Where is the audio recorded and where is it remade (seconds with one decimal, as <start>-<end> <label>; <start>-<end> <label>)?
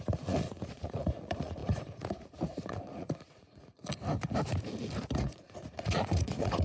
0.0-3.8 remade; 3.8-5.2 recorded; 5.2-6.6 remade